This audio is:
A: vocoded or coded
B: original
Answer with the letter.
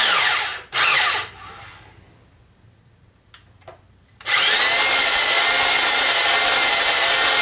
B